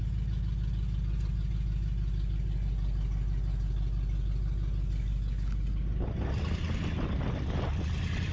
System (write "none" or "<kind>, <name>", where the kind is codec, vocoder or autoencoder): none